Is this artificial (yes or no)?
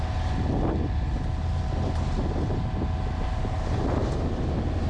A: no